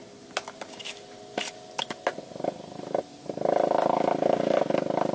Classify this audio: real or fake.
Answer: real